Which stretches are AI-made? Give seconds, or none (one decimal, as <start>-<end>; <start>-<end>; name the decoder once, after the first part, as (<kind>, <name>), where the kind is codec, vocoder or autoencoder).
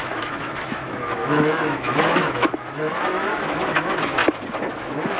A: 0.0-4.2 (autoencoder, DAC-VAE); 4.7-5.2